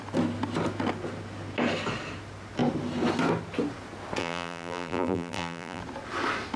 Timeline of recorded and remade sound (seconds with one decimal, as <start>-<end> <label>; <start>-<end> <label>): 0.0-4.2 recorded; 4.2-5.8 remade; 5.8-6.6 recorded